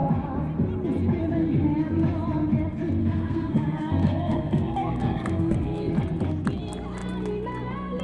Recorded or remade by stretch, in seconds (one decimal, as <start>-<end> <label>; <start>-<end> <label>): 0.0-3.0 recorded; 3.0-5.9 remade; 5.9-8.0 recorded